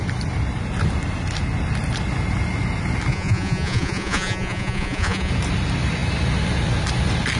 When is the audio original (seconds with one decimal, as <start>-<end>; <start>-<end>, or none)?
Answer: 0.0-3.1; 5.3-7.4